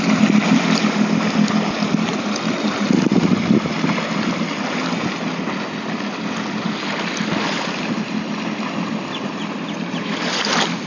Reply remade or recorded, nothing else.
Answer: recorded